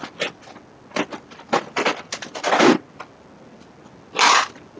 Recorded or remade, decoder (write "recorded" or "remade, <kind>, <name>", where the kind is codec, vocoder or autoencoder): recorded